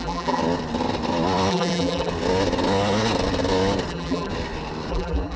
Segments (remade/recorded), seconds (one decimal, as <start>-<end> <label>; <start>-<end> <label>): 0.0-0.4 remade; 0.4-1.5 recorded; 1.5-2.1 remade; 2.1-3.9 recorded; 3.9-4.3 remade; 4.3-4.9 recorded; 4.9-5.4 remade